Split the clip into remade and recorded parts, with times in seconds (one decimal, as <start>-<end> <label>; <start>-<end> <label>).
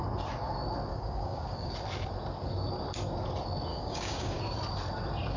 0.0-0.9 recorded; 0.9-1.7 remade; 1.7-3.7 recorded; 3.7-4.4 remade; 4.4-5.4 recorded